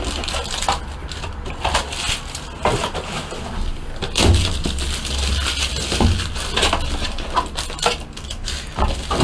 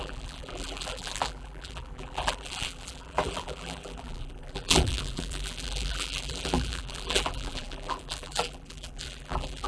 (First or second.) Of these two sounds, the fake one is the second